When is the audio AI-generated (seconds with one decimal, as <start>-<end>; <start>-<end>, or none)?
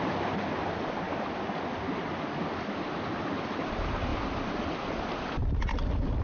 none